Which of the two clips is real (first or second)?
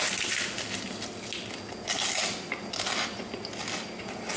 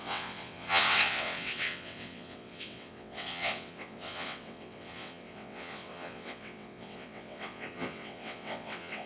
first